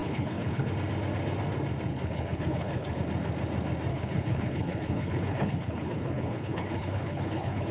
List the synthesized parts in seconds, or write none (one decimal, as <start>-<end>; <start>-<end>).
0.0-0.7; 1.9-3.0; 3.9-7.7